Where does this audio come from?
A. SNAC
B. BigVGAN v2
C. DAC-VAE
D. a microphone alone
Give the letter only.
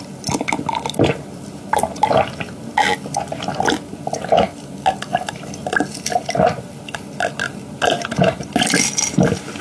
D